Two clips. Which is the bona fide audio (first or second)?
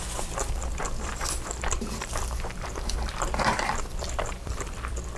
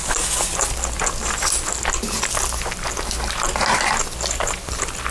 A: second